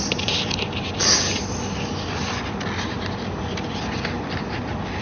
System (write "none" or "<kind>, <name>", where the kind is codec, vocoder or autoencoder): none